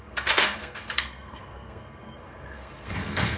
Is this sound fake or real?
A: fake